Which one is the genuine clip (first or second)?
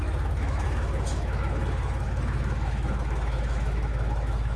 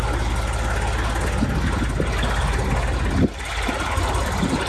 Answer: second